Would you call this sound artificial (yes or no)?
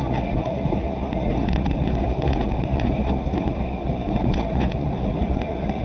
yes